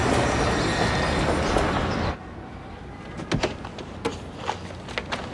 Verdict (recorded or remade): recorded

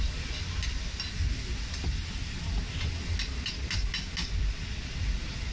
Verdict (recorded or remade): recorded